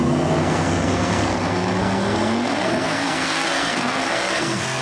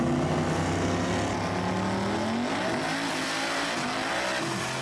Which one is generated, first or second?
first